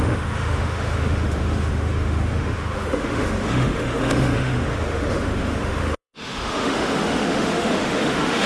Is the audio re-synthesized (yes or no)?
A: yes